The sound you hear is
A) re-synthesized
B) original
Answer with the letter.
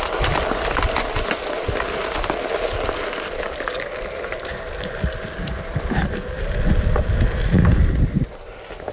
B